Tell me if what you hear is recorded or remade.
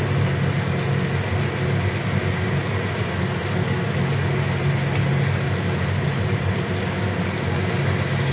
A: recorded